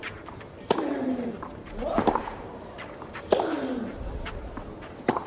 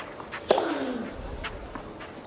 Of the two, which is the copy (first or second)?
first